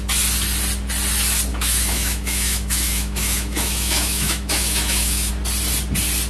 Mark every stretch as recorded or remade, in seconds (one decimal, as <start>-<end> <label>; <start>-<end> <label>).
0.0-1.5 recorded; 1.5-5.3 remade; 5.3-6.3 recorded